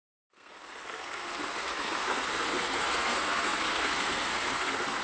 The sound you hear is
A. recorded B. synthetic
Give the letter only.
B